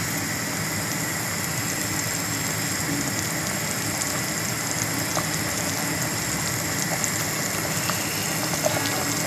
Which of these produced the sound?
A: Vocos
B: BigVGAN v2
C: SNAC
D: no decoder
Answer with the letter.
D